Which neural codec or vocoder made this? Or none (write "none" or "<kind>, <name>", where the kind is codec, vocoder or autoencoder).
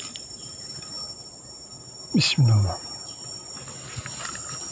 none